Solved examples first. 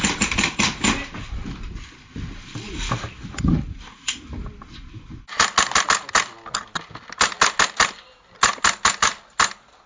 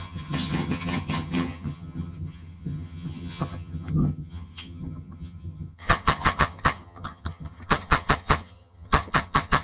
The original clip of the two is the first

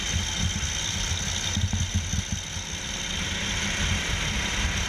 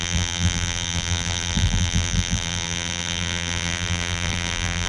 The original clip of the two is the first